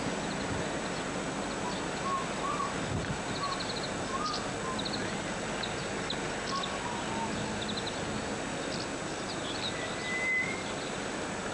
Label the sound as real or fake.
real